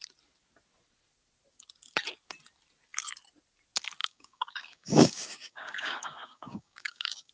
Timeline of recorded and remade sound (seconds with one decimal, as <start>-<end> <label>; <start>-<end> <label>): 0.0-4.0 recorded; 4.0-7.3 remade